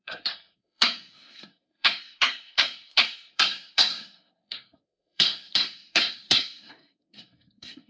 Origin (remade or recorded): remade